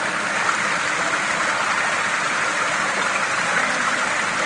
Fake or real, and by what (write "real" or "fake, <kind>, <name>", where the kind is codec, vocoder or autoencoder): real